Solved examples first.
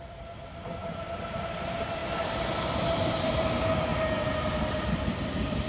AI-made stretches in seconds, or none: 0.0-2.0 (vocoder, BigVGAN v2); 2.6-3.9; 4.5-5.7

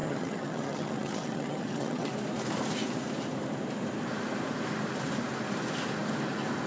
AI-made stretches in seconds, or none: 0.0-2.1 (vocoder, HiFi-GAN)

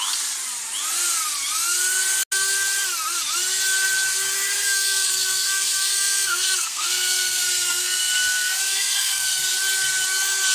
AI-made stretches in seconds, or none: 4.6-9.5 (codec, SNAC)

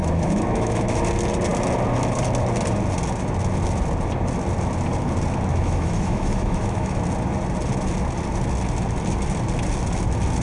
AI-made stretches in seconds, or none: 0.0-1.0 (autoencoder, DAC-VAE); 5.5-7.0

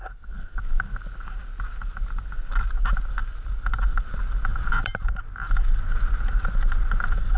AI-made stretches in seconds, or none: 3.2-3.8 (vocoder, BigVGAN v2); 4.5-5.4

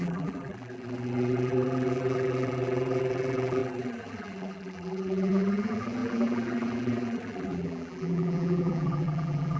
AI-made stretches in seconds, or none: 0.0-9.6 (vocoder, BigVGAN v2)

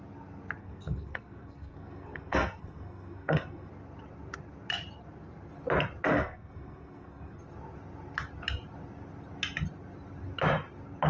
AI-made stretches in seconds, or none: 0.6-3.7 (codec, SNAC); 6.1-7.4